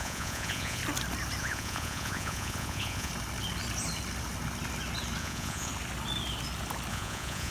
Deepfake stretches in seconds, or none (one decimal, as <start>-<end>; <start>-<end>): 0.0-0.8; 1.4-3.1; 5.2-5.7; 6.9-7.5